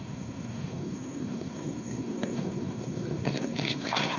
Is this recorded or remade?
remade